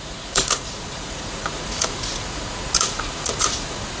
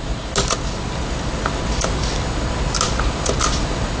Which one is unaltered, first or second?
second